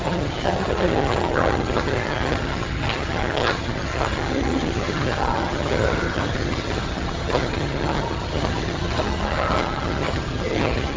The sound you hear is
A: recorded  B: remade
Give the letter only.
B